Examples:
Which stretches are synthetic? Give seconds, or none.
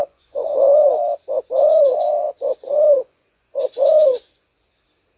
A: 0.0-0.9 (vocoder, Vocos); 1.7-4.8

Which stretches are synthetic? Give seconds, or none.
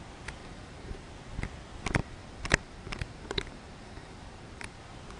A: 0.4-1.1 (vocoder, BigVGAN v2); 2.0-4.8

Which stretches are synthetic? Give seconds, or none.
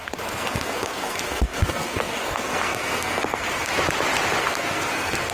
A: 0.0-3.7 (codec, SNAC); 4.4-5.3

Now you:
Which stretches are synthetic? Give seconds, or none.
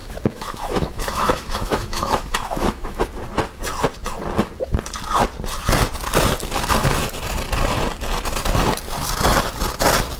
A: 0.0-3.0 (autoencoder, DAC-VAE)